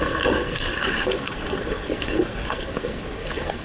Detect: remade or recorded remade